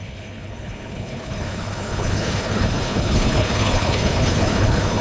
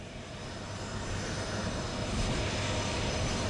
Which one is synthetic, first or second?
first